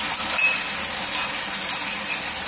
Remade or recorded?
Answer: recorded